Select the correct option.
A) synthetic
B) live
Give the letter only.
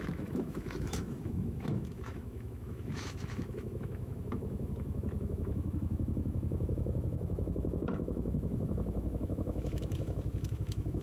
A